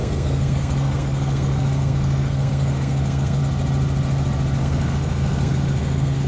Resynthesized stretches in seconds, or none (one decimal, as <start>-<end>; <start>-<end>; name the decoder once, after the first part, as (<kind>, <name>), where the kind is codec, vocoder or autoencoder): 0.0-3.4 (codec, SNAC); 4.6-6.3